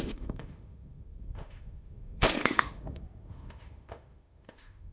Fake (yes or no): yes